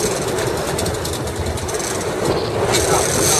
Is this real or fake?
real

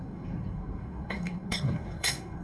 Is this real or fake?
fake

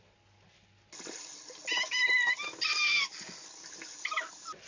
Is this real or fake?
real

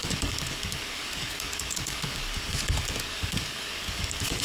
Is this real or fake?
fake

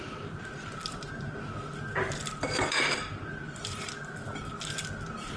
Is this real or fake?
real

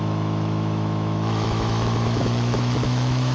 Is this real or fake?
fake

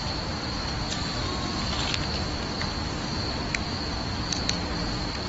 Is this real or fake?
real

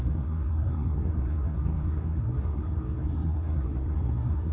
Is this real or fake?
fake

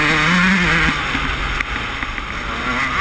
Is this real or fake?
real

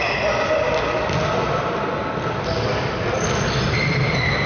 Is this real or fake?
real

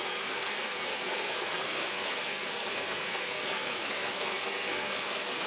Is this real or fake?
fake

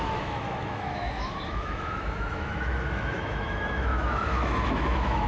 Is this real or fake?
fake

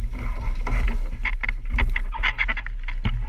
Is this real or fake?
real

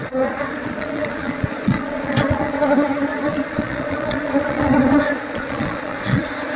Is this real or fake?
fake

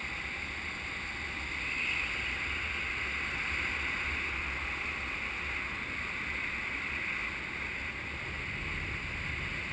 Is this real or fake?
real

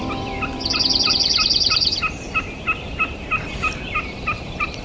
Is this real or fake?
fake